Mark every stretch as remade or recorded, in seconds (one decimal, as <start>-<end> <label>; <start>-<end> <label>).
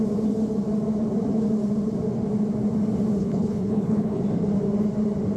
0.0-3.2 recorded; 3.2-4.2 remade; 4.2-5.4 recorded